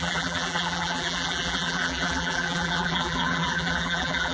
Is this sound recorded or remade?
remade